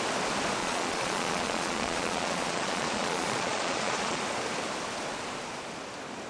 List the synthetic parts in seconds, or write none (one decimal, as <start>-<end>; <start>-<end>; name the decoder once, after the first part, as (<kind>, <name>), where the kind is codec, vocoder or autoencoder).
0.6-4.2 (vocoder, Vocos)